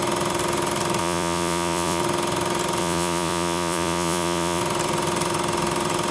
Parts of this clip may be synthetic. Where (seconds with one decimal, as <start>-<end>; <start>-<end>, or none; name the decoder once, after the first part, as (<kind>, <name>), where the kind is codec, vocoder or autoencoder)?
1.0-2.0 (vocoder, Vocos); 2.8-4.6